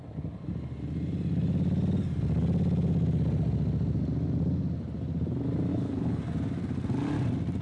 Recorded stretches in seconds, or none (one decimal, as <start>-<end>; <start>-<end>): 0.0-5.7; 6.2-7.6

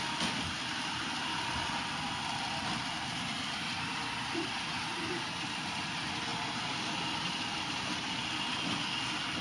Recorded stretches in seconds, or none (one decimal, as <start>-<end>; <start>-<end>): 0.0-6.3; 8.1-9.4

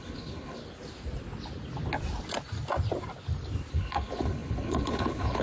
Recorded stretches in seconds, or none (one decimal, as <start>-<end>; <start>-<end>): 0.6-3.7

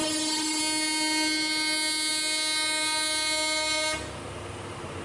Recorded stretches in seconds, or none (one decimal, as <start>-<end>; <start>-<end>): 0.6-5.0

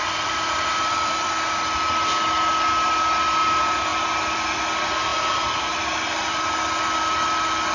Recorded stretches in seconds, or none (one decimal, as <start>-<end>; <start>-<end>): 1.3-3.9; 4.5-5.1; 6.4-7.7